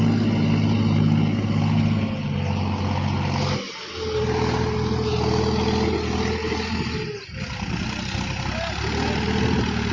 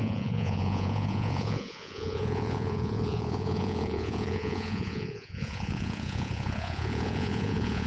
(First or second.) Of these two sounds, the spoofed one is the second